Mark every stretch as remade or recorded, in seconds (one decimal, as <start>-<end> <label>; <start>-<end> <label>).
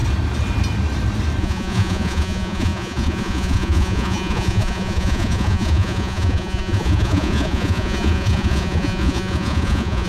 0.0-1.4 recorded; 1.4-10.1 remade